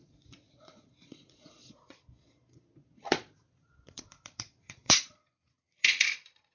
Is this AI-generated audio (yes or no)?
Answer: yes